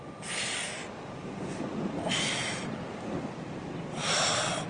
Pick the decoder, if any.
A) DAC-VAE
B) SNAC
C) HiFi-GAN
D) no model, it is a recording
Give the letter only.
D